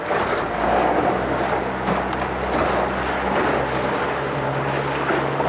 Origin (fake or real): real